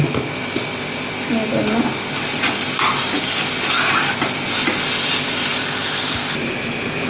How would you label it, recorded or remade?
recorded